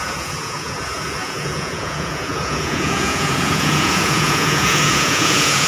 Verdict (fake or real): fake